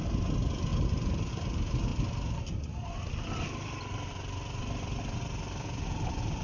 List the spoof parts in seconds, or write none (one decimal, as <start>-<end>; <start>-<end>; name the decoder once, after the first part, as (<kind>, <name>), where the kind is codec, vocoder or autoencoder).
none